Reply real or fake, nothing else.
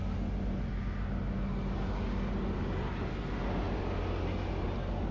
real